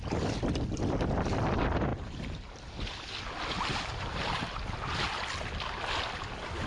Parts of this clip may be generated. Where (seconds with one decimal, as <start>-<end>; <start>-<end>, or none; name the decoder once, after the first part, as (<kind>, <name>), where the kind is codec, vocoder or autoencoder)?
1.9-3.1 (vocoder, BigVGAN v2); 3.7-4.6